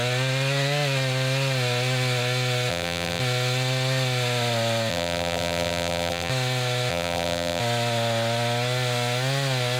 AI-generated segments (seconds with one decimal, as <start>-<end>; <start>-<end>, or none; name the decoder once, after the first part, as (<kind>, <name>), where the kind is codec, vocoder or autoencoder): 2.7-3.2 (vocoder, BigVGAN v2); 4.9-6.3; 6.9-7.6

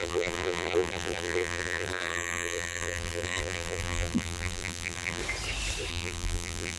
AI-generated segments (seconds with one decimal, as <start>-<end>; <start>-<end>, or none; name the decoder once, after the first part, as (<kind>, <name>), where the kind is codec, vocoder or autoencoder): 0.0-5.2 (vocoder, BigVGAN v2); 5.9-6.8

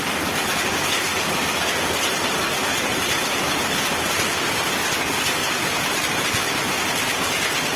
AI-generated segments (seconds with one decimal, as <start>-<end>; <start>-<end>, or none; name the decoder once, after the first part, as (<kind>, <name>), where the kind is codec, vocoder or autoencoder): 1.1-4.7 (vocoder, BigVGAN v2); 5.4-6.2

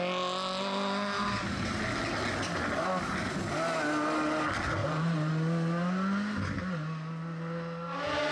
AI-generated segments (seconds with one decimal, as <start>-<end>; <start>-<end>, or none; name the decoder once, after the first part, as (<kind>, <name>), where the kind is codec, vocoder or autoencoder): 4.8-5.3 (vocoder, BigVGAN v2)

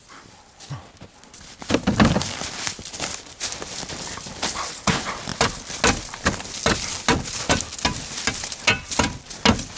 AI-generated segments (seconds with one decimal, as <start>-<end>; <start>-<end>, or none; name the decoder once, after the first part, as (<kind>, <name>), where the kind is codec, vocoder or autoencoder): none

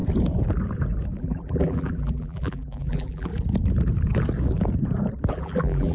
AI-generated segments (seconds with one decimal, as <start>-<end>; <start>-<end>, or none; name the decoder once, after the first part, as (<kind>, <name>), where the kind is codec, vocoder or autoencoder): 1.2-3.3 (vocoder, BigVGAN v2); 5.3-5.9